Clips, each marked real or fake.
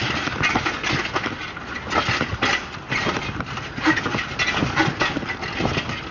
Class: real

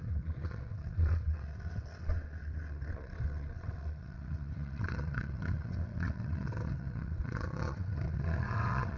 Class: fake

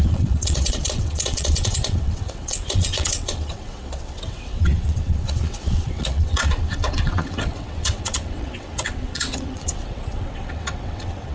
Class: fake